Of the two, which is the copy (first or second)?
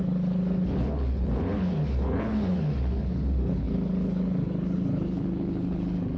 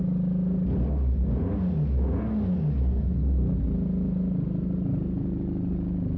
first